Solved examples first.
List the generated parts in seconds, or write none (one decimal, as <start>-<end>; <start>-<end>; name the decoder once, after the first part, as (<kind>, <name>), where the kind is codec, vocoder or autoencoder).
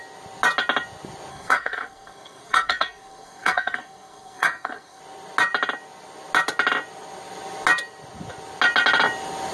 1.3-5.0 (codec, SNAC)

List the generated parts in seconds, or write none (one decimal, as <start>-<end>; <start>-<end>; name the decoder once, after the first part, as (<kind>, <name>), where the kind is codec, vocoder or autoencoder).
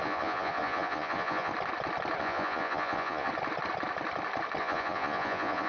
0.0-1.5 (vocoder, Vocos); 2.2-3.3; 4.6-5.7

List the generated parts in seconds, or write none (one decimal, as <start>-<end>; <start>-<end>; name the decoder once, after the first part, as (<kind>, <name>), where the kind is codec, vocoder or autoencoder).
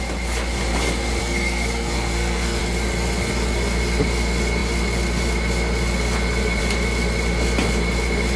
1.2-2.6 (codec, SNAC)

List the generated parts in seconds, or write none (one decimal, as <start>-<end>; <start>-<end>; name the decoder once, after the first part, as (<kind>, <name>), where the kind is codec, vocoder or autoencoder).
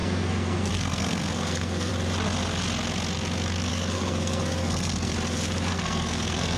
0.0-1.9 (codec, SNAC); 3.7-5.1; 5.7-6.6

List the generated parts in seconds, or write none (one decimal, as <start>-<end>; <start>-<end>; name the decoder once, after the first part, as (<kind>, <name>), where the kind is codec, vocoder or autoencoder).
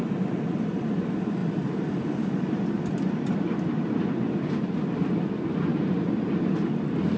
none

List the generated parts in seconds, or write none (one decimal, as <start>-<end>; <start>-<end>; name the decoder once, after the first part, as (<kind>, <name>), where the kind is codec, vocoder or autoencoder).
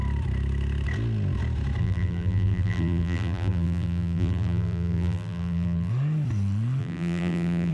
1.8-5.9 (vocoder, BigVGAN v2); 6.8-7.7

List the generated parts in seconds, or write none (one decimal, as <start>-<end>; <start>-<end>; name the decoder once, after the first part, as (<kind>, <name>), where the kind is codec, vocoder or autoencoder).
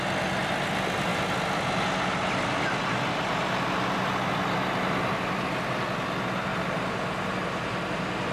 none